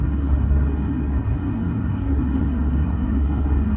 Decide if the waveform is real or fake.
fake